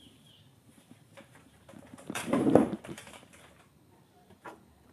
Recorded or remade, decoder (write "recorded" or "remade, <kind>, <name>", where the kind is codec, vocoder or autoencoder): remade, vocoder, BigVGAN v2